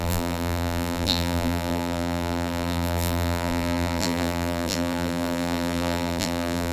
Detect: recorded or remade remade